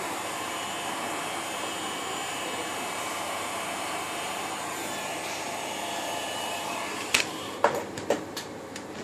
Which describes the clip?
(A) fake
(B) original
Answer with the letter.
A